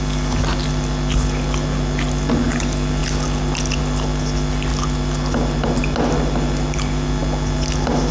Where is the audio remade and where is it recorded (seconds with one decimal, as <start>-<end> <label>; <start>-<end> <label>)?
0.0-8.1 recorded